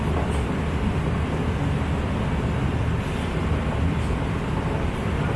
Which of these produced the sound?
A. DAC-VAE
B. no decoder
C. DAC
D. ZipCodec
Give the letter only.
B